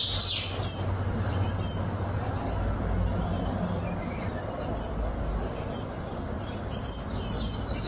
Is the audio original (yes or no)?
yes